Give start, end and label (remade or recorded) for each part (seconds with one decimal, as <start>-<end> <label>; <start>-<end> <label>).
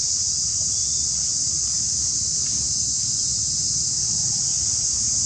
0.0-5.3 recorded